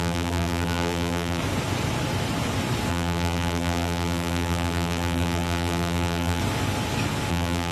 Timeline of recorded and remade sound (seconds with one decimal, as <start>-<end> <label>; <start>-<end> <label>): 0.0-1.4 remade; 1.4-2.9 recorded; 2.9-6.4 remade; 6.4-7.3 recorded; 7.3-7.7 remade